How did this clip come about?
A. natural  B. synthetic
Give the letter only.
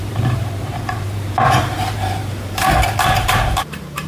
B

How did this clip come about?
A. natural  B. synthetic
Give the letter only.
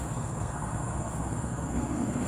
B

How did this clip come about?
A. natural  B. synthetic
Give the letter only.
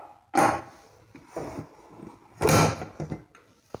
A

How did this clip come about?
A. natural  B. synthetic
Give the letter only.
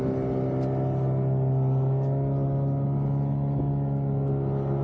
A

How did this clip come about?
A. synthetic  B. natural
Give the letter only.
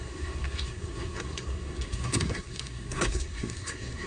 A